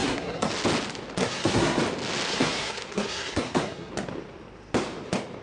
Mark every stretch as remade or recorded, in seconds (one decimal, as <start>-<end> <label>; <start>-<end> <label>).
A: 0.0-0.5 remade; 0.5-1.2 recorded; 1.2-1.8 remade; 1.8-2.3 recorded; 2.3-3.9 remade; 3.9-5.4 recorded